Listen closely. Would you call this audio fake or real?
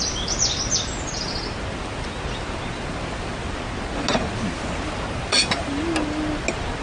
real